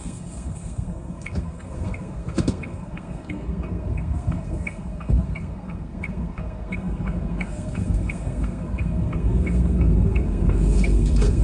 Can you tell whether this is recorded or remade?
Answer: remade